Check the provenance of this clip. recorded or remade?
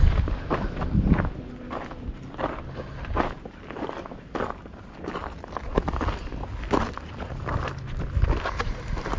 recorded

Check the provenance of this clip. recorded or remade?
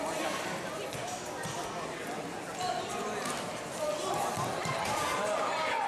recorded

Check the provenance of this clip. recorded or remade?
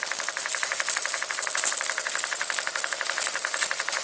recorded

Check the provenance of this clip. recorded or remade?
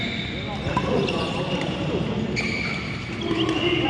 recorded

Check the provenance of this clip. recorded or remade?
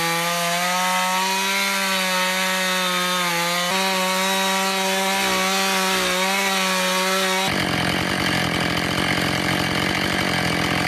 recorded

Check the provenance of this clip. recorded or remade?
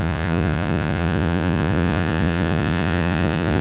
remade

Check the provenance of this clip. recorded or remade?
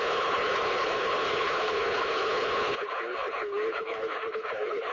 remade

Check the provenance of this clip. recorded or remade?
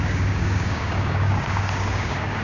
remade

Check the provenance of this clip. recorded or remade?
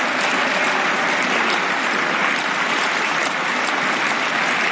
recorded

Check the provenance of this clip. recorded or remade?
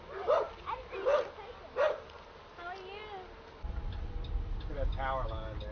recorded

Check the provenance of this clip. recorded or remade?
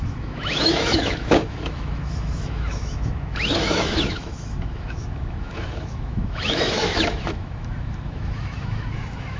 remade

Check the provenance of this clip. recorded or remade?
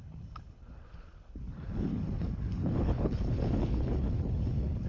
remade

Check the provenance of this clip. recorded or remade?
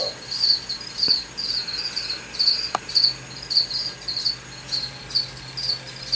recorded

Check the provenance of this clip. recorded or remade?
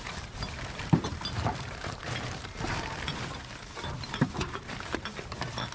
remade